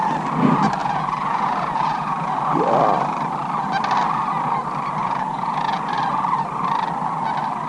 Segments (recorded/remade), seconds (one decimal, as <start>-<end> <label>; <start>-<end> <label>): 0.0-0.8 recorded; 0.8-2.3 remade; 2.3-5.0 recorded; 5.0-5.9 remade; 5.9-7.7 recorded